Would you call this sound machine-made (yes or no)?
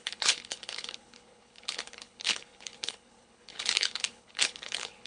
yes